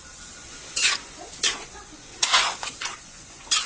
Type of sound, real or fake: fake